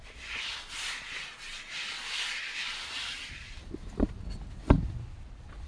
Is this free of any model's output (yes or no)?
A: yes